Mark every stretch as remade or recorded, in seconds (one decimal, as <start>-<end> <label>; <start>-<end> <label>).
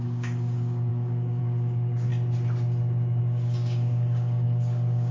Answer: 0.0-2.1 remade; 2.1-3.2 recorded; 3.2-5.1 remade